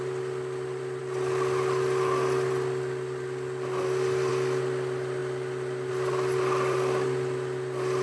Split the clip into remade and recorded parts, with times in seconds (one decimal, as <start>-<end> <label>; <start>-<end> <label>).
0.0-8.0 recorded

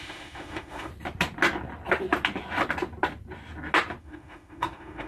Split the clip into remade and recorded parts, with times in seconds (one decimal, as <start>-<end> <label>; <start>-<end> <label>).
0.0-0.9 remade; 0.9-4.0 recorded; 4.0-5.1 remade

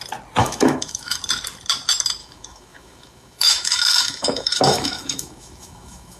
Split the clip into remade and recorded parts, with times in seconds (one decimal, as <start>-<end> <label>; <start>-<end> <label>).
0.0-0.4 recorded; 0.4-1.2 remade; 1.2-2.2 recorded; 2.2-6.2 remade

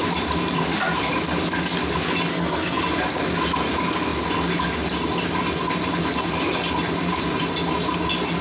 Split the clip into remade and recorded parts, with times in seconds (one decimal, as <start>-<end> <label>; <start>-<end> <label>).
0.0-2.3 recorded; 2.3-2.8 remade; 2.8-8.4 recorded

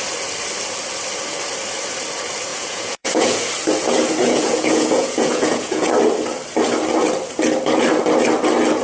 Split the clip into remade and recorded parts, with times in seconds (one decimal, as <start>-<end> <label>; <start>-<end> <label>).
0.0-2.5 recorded; 2.5-3.5 remade; 3.5-4.2 recorded; 4.2-5.9 remade; 5.9-8.8 recorded

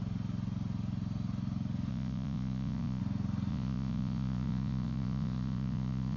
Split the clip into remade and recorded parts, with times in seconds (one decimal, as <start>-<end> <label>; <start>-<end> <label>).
0.0-1.9 recorded; 1.9-3.0 remade; 3.0-3.5 recorded; 3.5-6.2 remade

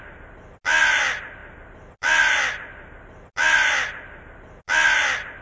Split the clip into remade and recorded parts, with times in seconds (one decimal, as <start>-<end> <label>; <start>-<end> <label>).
0.0-5.4 recorded